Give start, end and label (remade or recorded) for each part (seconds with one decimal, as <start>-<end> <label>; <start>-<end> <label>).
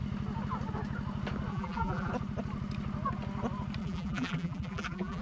0.0-1.5 recorded; 1.5-2.1 remade; 2.1-3.8 recorded; 3.8-5.2 remade